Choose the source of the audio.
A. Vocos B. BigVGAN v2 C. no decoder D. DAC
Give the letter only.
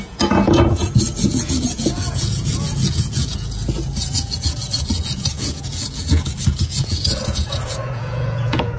A